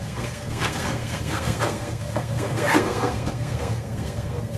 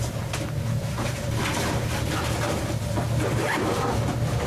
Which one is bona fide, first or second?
second